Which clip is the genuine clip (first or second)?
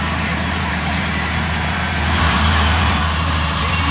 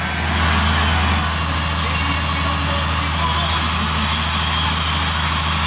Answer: second